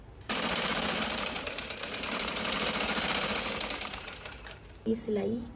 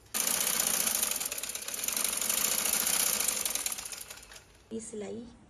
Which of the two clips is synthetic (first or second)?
first